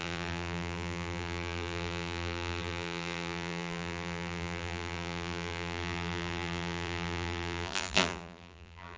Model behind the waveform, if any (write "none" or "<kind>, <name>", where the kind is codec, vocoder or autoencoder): vocoder, BigVGAN v2